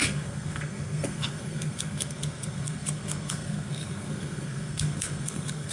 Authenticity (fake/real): fake